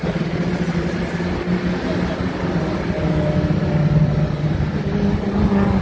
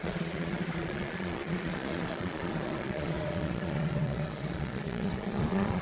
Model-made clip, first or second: second